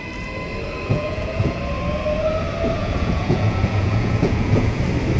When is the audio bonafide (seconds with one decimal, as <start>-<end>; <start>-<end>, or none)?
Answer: 0.0-0.9; 1.6-2.8; 4.8-5.2